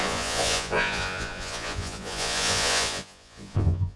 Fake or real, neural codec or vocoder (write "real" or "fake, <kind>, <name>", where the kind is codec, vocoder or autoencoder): fake, vocoder, Vocos